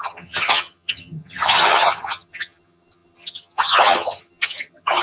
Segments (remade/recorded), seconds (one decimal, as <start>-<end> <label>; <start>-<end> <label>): 0.0-5.0 remade